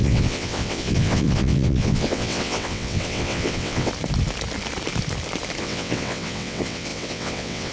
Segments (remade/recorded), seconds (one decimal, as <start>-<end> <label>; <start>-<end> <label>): 0.0-3.9 remade; 3.9-5.6 recorded; 5.6-7.7 remade

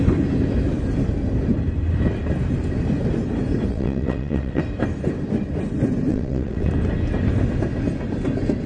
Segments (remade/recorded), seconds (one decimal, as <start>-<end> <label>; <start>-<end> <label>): 0.0-3.7 recorded; 3.7-4.6 remade; 4.6-6.1 recorded; 6.1-6.7 remade; 6.7-8.7 recorded

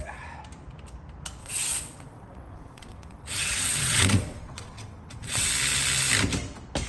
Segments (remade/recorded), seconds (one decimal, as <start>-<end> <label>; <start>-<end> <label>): 0.0-1.4 recorded; 1.4-5.5 remade; 5.5-6.9 recorded

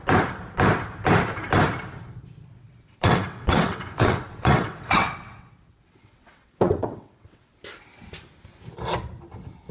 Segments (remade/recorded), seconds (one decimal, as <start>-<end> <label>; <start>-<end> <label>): 0.0-2.6 recorded; 2.6-7.5 remade; 7.5-9.7 recorded